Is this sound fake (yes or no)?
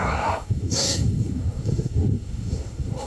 yes